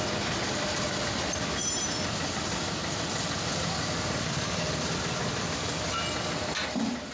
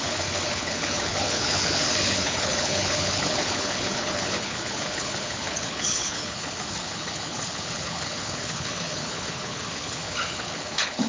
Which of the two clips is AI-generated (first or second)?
second